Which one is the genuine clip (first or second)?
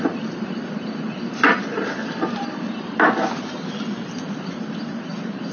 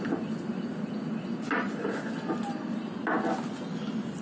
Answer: second